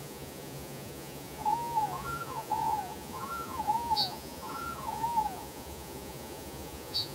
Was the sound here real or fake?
fake